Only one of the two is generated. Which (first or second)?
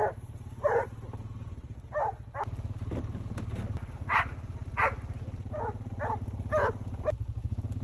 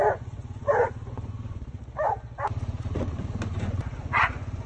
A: second